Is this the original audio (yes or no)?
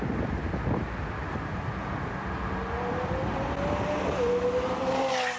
yes